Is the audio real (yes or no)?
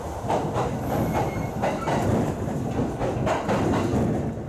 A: yes